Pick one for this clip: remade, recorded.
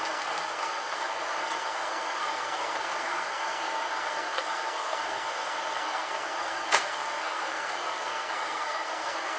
remade